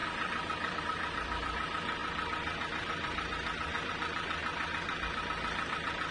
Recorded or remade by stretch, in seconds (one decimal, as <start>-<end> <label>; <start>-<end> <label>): 0.0-4.4 remade; 4.4-5.2 recorded; 5.2-6.1 remade